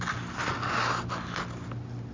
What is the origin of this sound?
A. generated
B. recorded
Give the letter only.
B